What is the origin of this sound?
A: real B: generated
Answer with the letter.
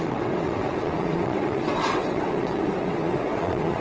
B